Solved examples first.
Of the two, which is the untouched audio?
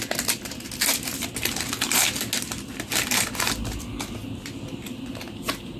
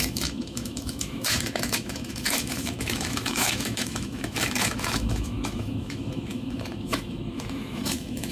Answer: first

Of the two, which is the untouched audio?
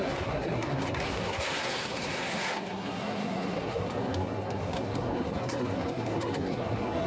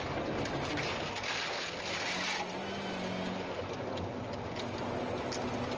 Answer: second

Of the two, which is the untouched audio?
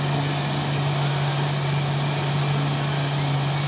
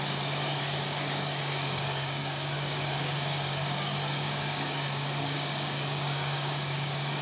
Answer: first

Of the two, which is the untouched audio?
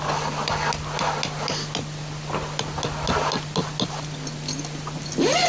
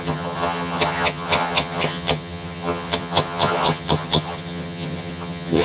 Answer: first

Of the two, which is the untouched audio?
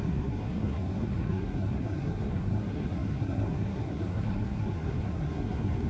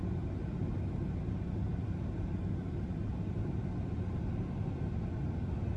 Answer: second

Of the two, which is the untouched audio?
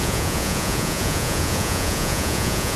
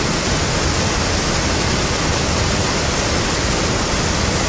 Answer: second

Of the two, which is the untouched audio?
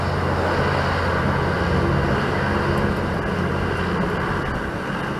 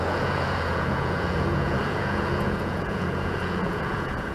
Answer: first